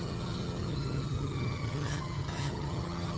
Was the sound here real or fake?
fake